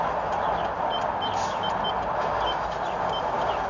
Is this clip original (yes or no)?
yes